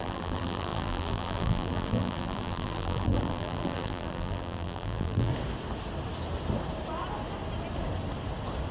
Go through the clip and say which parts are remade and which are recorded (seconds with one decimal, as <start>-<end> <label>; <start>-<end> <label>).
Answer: 0.0-5.3 remade; 5.3-8.7 recorded